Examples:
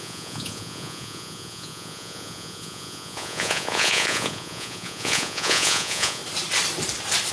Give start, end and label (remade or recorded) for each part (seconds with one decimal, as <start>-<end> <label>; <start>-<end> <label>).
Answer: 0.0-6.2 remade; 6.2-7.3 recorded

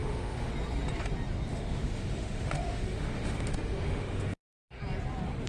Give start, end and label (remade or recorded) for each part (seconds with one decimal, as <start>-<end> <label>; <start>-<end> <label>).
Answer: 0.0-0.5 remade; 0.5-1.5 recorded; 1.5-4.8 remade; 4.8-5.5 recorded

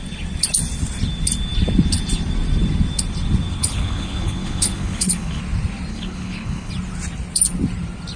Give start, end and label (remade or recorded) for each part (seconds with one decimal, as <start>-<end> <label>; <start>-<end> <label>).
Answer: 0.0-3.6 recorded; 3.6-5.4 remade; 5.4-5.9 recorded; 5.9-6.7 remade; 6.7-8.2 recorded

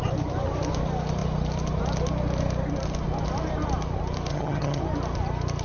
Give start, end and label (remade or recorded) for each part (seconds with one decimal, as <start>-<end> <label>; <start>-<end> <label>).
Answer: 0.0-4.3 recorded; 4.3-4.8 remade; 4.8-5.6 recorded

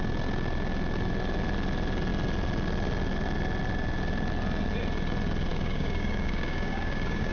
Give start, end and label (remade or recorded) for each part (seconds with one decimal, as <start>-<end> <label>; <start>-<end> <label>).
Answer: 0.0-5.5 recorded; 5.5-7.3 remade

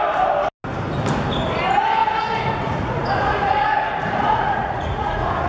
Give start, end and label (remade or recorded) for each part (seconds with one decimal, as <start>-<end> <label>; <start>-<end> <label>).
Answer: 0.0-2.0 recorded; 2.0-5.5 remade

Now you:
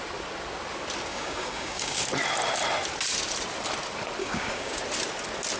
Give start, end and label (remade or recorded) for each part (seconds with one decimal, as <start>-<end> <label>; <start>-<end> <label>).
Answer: 0.0-1.1 recorded; 1.1-2.0 remade; 2.0-4.2 recorded; 4.2-4.8 remade; 4.8-5.6 recorded

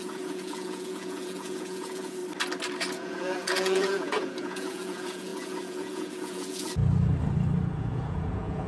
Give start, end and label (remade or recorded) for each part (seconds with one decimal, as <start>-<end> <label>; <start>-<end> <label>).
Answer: 0.0-2.2 remade; 2.2-2.9 recorded; 2.9-6.8 remade; 6.8-7.7 recorded; 7.7-8.7 remade